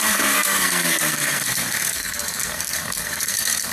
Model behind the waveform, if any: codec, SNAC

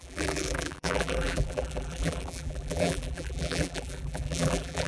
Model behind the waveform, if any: vocoder, BigVGAN v2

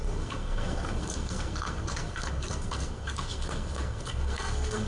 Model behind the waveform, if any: codec, SNAC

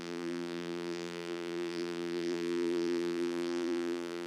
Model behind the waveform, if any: vocoder, BigVGAN v2